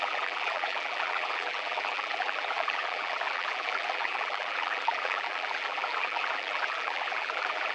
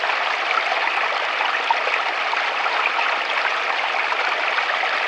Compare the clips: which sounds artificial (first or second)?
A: first